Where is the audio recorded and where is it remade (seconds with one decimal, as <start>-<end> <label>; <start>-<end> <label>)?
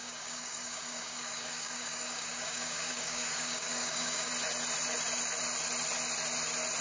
0.0-4.3 remade; 4.3-6.8 recorded